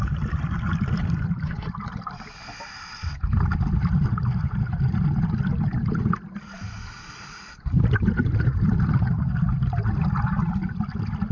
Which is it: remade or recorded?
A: recorded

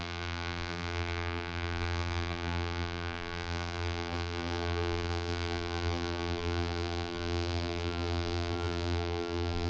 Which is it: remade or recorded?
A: remade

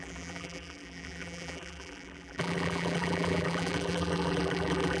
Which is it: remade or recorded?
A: remade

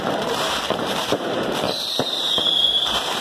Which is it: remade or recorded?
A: remade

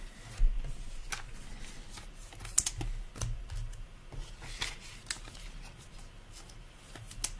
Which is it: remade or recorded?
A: recorded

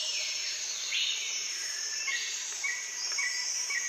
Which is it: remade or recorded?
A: remade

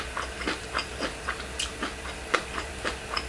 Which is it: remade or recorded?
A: remade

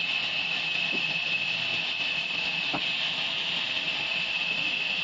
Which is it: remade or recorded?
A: recorded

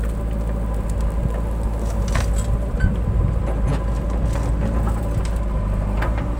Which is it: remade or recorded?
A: recorded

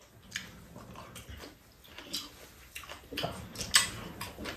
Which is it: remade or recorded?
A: recorded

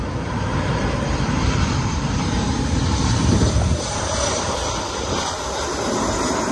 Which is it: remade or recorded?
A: remade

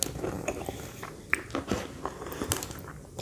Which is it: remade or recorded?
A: recorded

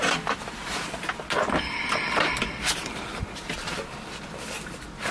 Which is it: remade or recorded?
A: recorded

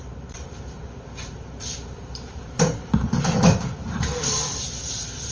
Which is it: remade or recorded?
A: remade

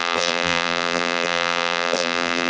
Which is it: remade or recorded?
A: remade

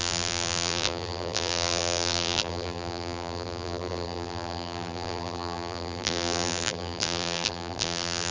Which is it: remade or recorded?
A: remade